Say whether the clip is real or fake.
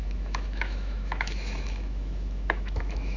fake